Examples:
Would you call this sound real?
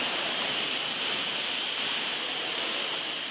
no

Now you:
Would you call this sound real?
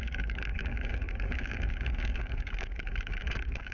no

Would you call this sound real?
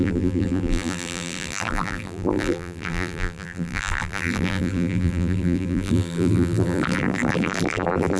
no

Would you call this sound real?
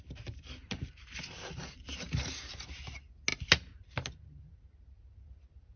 yes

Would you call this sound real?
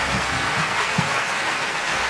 no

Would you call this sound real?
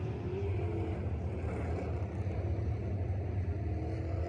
yes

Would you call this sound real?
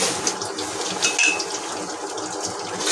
yes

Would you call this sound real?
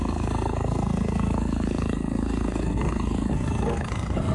no